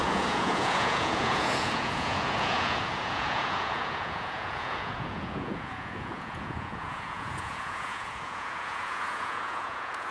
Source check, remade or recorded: remade